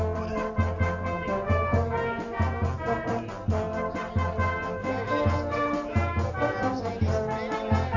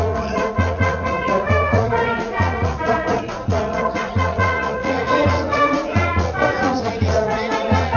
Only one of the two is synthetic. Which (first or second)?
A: second